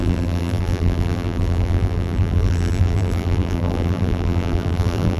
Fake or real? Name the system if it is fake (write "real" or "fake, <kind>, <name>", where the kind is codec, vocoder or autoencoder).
fake, vocoder, BigVGAN v2